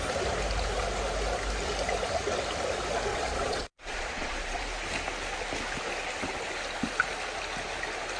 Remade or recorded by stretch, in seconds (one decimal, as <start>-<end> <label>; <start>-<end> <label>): 0.0-3.1 recorded; 3.1-4.6 remade; 4.6-8.2 recorded